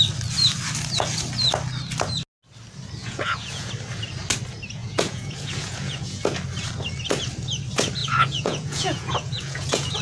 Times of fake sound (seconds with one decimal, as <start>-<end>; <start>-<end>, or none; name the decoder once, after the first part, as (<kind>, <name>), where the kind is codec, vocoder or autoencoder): 3.0-3.7 (vocoder, Vocos); 4.8-6.2; 8.0-10.0